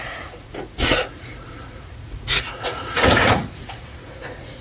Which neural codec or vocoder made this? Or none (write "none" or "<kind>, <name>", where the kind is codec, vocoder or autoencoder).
vocoder, Vocos